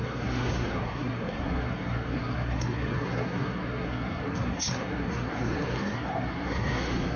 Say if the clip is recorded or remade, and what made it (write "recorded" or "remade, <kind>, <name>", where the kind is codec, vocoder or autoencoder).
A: remade, codec, SNAC